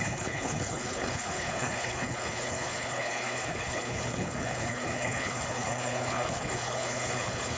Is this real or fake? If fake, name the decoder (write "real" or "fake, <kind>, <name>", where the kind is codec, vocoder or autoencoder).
fake, codec, HILCodec